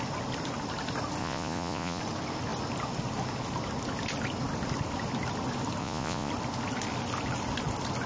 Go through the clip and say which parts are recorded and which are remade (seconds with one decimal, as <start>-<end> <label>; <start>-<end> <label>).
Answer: 0.0-1.2 recorded; 1.2-2.0 remade; 2.0-5.8 recorded; 5.8-6.3 remade; 6.3-8.1 recorded